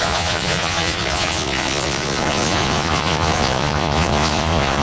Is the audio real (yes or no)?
no